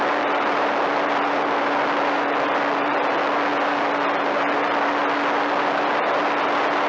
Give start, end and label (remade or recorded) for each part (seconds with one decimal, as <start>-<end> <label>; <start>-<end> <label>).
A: 0.0-6.9 recorded